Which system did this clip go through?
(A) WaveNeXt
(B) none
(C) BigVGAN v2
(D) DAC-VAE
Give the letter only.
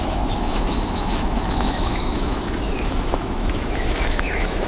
D